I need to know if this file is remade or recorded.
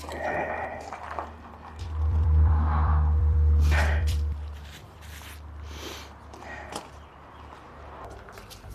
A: remade